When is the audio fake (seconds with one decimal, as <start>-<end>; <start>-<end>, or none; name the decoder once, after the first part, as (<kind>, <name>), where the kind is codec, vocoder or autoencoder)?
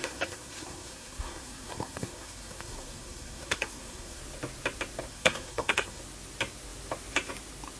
0.0-4.2 (codec, SNAC); 5.1-6.0